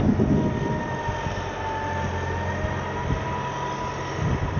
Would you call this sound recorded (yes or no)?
yes